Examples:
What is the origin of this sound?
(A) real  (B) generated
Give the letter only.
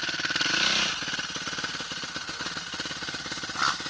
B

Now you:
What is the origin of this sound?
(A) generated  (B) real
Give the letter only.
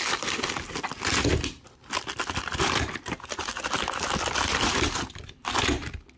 B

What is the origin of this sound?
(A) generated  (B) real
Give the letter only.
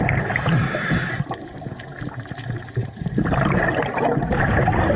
A